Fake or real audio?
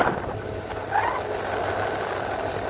real